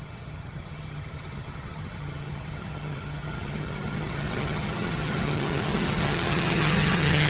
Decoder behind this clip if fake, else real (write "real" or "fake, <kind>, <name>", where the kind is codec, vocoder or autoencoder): fake, vocoder, HiFi-GAN